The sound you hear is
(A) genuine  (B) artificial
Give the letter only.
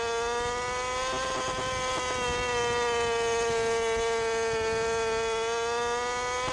A